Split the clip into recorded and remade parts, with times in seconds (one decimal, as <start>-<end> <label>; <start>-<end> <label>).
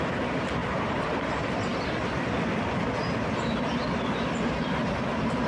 0.0-0.6 recorded; 0.6-1.1 remade; 1.1-5.5 recorded